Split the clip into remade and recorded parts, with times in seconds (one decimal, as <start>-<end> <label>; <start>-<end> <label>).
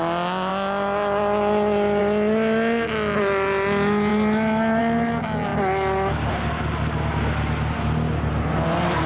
0.0-9.1 recorded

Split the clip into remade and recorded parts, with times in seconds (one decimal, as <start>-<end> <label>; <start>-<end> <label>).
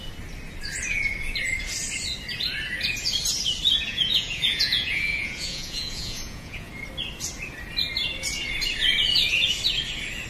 0.0-3.9 recorded; 3.9-6.7 remade; 6.7-10.3 recorded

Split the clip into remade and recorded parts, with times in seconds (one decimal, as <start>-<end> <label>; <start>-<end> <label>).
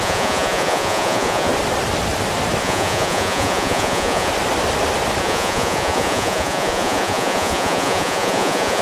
0.0-1.5 remade; 1.5-2.6 recorded; 2.6-4.3 remade; 4.3-5.2 recorded; 5.2-8.8 remade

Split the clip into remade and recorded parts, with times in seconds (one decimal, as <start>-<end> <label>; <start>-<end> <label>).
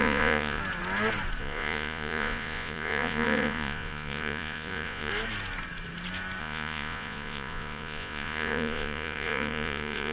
0.0-0.6 remade; 0.6-1.4 recorded; 1.4-5.1 remade; 5.1-6.4 recorded; 6.4-10.1 remade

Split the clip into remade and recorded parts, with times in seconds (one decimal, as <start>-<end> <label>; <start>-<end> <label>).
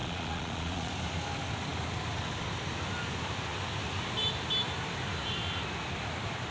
0.0-0.9 remade; 0.9-6.5 recorded